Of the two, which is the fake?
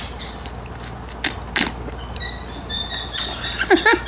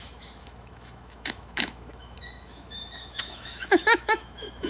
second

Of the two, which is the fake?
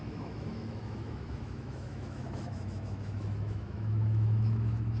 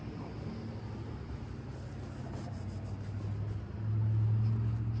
first